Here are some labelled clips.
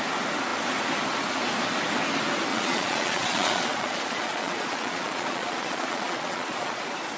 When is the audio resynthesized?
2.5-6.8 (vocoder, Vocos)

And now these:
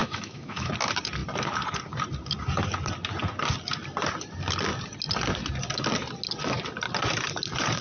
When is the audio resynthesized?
0.0-0.7 (autoencoder, DAC-VAE)

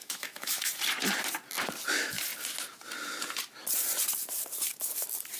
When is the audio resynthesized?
0.0-0.7 (autoencoder, DAC-VAE)

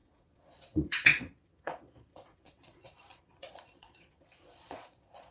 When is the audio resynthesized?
0.0-5.3 (vocoder, Vocos)

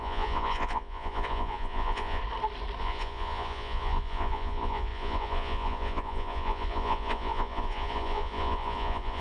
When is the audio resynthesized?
0.0-2.2 (vocoder, Vocos); 2.8-9.2

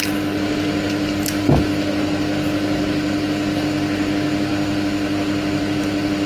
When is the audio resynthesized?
none